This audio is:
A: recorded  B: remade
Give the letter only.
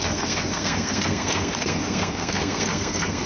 B